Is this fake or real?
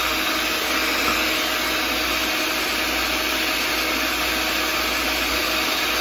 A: real